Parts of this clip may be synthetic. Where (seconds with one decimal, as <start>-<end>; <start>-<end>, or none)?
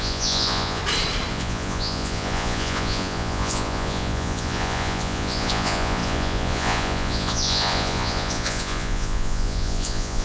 0.0-0.8; 1.3-10.2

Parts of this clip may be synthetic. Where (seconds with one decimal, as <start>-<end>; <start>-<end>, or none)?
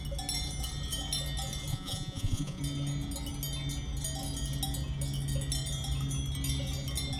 1.7-2.6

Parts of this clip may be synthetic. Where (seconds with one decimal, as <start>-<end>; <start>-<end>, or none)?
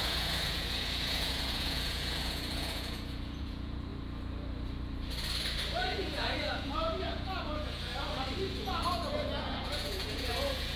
0.0-3.9; 5.8-7.9; 8.6-10.8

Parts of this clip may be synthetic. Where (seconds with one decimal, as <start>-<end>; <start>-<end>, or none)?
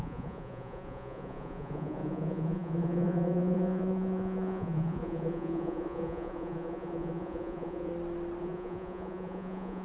0.0-7.9; 8.4-9.8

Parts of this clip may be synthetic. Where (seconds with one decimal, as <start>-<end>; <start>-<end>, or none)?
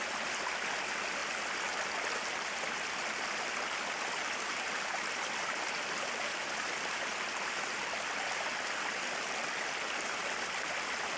none